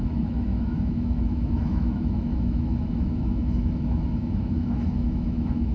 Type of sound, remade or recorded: remade